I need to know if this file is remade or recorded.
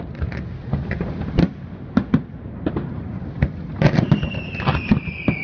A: recorded